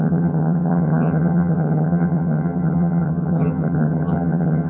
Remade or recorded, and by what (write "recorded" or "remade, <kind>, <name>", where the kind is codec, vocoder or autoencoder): remade, vocoder, HiFi-GAN